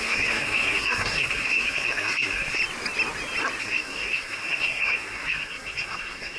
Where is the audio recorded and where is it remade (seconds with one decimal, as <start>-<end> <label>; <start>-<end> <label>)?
0.0-2.6 remade; 2.6-3.6 recorded; 3.6-6.4 remade